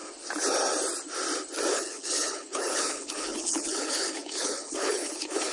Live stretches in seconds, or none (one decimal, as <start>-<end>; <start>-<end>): 0.0-1.7